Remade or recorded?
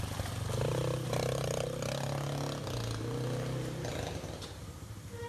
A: recorded